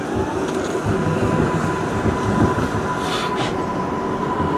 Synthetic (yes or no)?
no